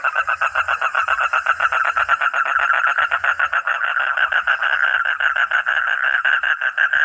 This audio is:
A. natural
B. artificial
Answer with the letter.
B